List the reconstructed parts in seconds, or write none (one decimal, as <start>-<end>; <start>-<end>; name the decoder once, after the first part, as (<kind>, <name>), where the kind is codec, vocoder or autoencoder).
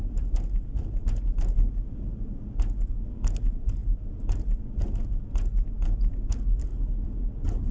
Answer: 3.8-4.6 (vocoder, BigVGAN v2)